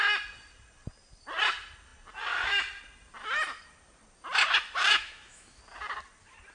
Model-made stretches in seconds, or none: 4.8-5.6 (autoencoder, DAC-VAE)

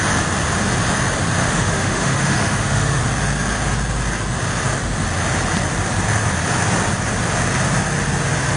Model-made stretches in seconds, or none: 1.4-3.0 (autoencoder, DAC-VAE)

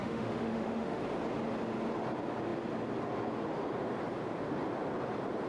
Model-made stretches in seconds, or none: 0.0-1.0 (autoencoder, DAC-VAE)

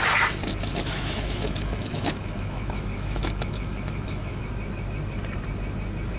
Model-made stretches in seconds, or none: 0.7-4.4 (autoencoder, DAC-VAE)

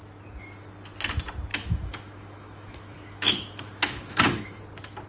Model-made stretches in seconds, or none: 1.5-4.6 (autoencoder, DAC-VAE)